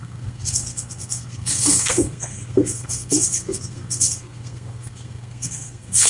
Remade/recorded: remade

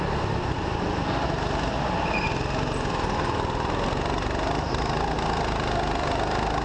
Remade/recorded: recorded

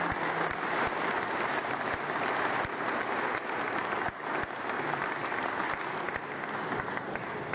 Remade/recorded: recorded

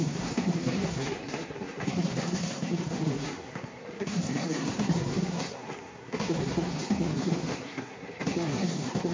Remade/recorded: remade